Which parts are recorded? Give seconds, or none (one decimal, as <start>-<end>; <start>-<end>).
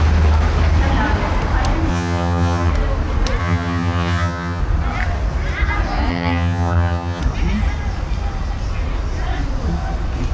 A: 0.0-1.9; 2.7-3.4; 4.6-6.1; 7.2-10.3